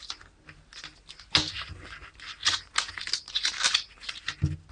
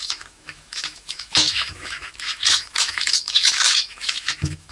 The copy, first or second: second